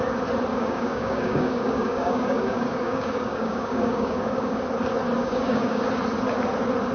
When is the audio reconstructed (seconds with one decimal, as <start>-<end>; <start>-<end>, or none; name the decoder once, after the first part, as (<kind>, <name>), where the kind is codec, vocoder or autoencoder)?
0.5-4.6 (codec, DAC); 5.2-5.8